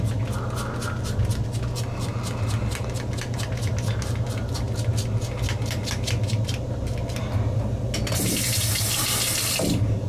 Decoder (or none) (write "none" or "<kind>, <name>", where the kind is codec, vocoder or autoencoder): none